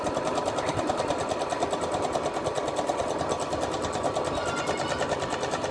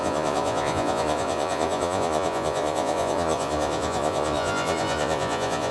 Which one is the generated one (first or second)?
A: second